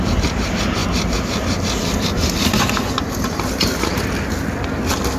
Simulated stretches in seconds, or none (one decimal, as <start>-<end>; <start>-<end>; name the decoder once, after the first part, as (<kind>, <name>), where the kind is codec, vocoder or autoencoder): none

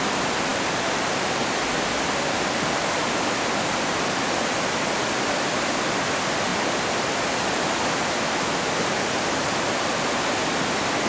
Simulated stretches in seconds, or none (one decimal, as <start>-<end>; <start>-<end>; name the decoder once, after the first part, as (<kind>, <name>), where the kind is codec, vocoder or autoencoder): 6.5-7.8 (vocoder, BigVGAN v2)